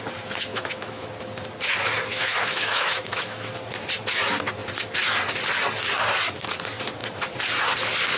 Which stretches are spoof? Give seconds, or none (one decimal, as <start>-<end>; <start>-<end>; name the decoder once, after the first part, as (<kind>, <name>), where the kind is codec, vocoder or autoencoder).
0.5-1.1 (autoencoder, DAC-VAE); 2.1-3.5